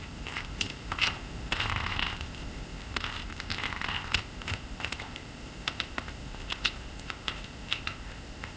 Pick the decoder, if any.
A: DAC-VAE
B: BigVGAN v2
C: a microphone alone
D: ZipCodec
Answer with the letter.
D